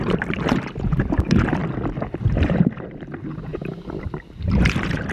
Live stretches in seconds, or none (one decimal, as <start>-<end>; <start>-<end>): 1.6-2.1; 3.5-4.0